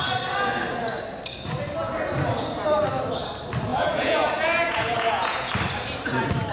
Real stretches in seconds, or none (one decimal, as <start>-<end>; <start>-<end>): 0.0-3.7; 5.5-6.5